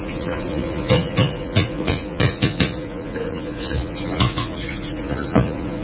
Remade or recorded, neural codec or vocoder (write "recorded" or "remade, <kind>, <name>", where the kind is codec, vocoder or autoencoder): remade, vocoder, Vocos